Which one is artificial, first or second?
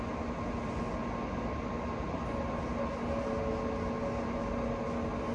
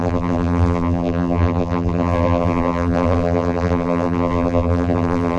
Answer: second